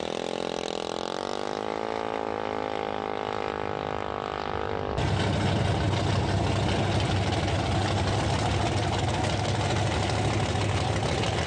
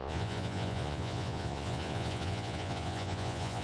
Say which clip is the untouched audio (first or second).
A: first